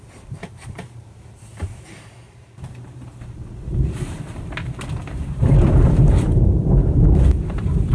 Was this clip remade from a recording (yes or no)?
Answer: yes